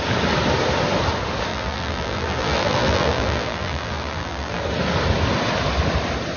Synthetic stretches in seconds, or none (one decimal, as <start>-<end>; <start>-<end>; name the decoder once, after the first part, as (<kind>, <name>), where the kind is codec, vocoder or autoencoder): 1.5-4.6 (vocoder, BigVGAN v2)

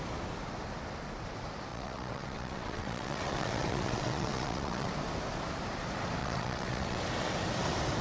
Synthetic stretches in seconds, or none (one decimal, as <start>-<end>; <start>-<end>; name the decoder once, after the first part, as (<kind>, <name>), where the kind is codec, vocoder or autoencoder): 1.7-4.9 (vocoder, WaveNeXt); 6.2-7.0

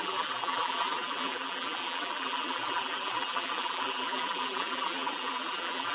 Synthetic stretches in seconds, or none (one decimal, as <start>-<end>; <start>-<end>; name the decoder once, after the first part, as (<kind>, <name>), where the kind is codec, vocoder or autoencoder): 0.0-5.9 (vocoder, BigVGAN v2)

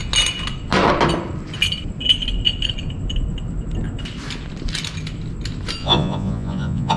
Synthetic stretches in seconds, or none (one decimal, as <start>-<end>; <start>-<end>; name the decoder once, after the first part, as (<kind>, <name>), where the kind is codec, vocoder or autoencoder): 5.8-7.0 (vocoder, Vocos)

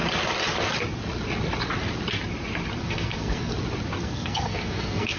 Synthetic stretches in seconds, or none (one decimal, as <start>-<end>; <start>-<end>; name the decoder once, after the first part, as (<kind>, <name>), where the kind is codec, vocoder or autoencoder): 2.8-3.5 (codec, SNAC); 4.0-5.2

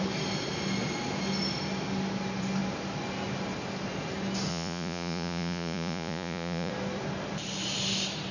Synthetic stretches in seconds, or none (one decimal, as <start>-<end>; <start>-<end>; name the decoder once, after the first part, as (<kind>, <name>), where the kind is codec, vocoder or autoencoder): 4.5-6.7 (vocoder, Vocos)

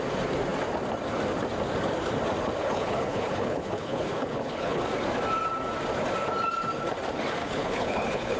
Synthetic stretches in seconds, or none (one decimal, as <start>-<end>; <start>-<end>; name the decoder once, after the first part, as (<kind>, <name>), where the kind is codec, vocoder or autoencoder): 2.6-4.8 (codec, HILCodec); 7.4-8.4